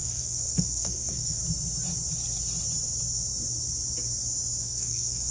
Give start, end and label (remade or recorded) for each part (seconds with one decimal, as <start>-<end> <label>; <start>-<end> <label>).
0.0-1.4 remade; 1.4-4.6 recorded; 4.6-5.3 remade